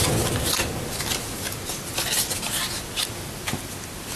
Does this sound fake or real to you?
real